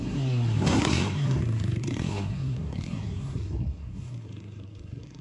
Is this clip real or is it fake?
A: fake